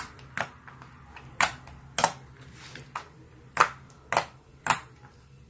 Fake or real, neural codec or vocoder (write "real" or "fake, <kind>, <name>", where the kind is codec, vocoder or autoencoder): real